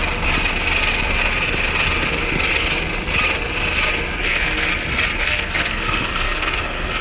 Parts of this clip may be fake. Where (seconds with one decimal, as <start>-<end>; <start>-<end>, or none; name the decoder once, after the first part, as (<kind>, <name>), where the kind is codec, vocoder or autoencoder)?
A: 4.2-4.7 (codec, SNAC); 5.2-7.0